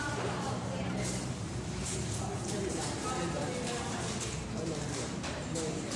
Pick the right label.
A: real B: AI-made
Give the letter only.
B